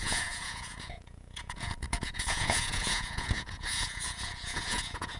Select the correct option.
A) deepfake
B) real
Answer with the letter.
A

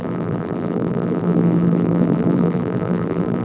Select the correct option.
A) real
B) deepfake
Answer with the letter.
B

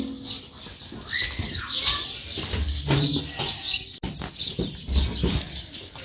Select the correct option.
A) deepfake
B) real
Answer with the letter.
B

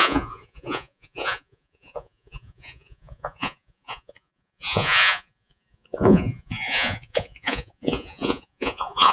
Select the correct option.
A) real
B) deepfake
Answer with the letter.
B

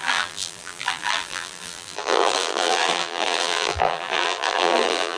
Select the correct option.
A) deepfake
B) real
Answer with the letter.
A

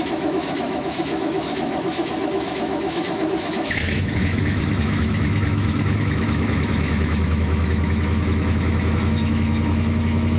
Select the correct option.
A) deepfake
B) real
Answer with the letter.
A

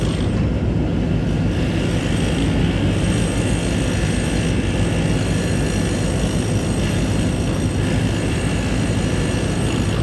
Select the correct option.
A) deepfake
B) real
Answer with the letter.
B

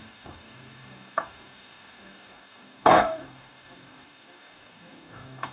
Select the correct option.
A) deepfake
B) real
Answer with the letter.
A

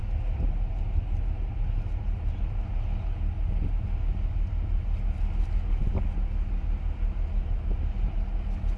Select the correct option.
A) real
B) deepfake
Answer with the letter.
A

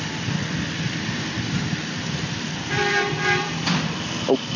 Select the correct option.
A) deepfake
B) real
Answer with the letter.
A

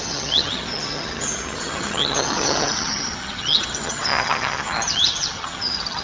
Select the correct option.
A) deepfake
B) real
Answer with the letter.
A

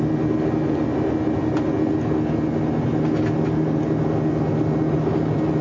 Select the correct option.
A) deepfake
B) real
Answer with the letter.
B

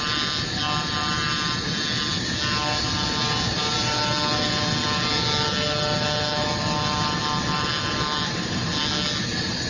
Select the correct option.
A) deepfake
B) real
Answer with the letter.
B